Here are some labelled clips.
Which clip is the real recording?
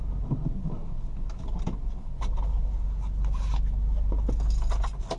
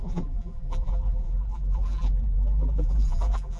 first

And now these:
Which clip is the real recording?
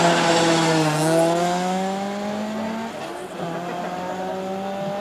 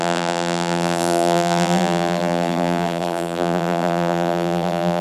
first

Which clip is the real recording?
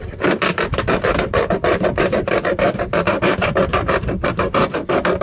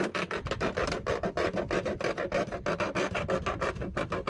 second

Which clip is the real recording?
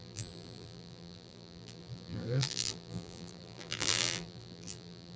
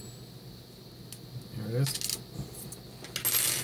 second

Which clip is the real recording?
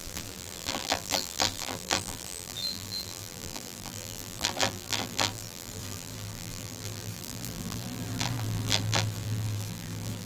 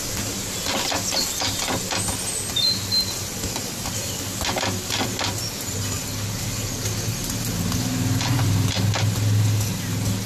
second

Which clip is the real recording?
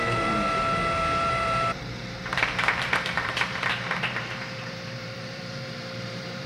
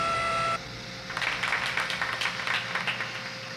second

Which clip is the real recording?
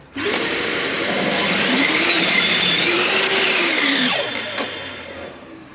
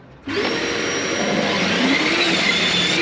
second